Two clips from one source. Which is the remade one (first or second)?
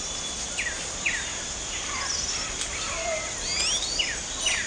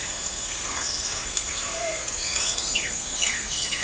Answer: second